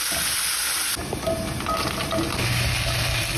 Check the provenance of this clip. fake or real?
real